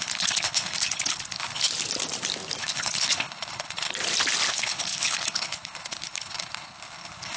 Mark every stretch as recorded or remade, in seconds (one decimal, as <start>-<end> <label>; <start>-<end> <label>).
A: 0.0-1.7 remade; 1.7-2.6 recorded; 2.6-3.9 remade; 3.9-4.5 recorded; 4.5-7.4 remade